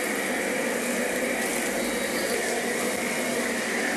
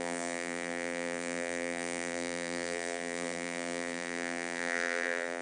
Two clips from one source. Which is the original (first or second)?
first